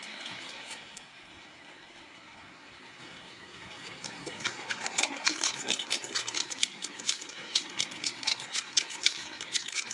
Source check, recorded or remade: remade